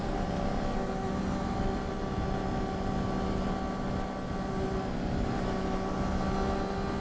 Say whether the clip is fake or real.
real